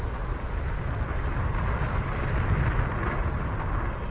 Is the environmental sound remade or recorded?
recorded